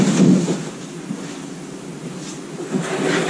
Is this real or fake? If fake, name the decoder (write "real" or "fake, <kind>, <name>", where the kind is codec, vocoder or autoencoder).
real